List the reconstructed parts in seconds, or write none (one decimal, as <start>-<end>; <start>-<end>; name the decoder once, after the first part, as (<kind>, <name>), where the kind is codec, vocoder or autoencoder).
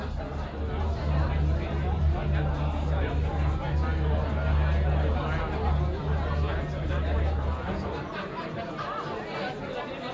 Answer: none